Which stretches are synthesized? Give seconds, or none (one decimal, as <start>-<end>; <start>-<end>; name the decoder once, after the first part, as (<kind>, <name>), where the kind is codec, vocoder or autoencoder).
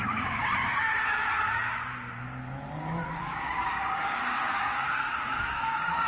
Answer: 0.0-0.9 (codec, DAC); 3.2-6.1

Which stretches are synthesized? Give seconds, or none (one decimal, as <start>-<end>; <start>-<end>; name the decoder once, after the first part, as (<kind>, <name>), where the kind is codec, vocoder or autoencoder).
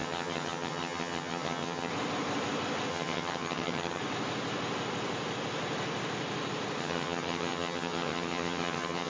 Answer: 0.0-1.9 (vocoder, HiFi-GAN); 2.9-4.0; 6.8-9.1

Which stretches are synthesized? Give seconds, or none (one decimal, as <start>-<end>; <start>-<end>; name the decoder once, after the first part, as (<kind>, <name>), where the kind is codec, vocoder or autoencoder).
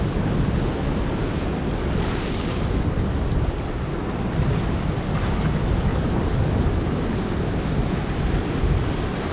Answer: 1.6-3.0 (codec, DAC); 5.9-6.4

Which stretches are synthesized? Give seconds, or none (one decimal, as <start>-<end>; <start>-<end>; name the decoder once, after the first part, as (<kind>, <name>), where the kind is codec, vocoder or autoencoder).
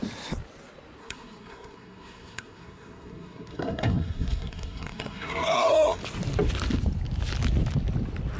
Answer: 1.0-6.0 (codec, SNAC)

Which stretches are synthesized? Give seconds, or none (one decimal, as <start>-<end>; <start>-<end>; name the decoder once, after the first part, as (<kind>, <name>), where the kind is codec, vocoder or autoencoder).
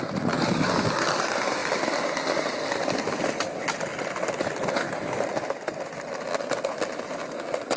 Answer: none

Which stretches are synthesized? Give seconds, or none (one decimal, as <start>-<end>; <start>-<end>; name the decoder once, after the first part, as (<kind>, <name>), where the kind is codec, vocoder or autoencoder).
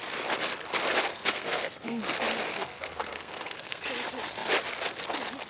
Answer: 1.1-2.0 (codec, SNAC); 2.5-3.8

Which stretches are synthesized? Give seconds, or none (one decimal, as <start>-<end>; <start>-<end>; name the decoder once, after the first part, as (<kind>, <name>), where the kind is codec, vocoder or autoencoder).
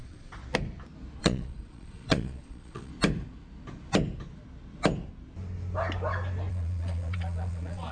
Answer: 0.0-0.4 (vocoder, Vocos); 1.2-2.9; 6.5-7.9